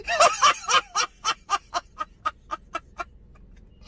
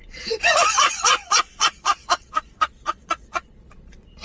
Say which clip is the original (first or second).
first